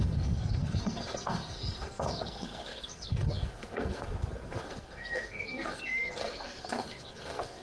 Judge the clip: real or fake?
fake